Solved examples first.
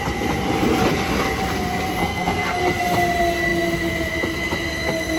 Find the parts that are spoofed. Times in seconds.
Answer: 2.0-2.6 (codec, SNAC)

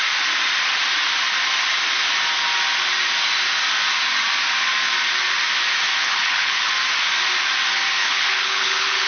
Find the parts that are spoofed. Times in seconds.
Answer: 6.0-6.7 (codec, HILCodec); 8.0-9.1

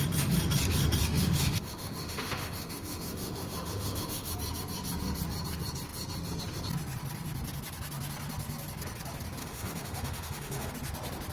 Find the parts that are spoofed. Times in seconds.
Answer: 1.0-4.3 (autoencoder, DAC-VAE); 9.4-10.7

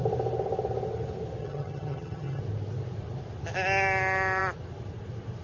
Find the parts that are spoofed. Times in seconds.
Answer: 1.4-2.4 (vocoder, HiFi-GAN)

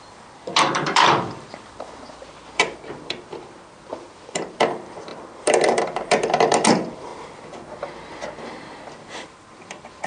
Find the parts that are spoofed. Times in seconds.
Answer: 0.0-7.1 (vocoder, BigVGAN v2); 8.6-10.1